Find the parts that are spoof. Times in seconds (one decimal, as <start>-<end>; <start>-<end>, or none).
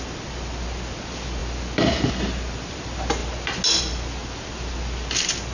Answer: none